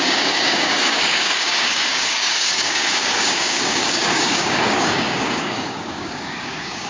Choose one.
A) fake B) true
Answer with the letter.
A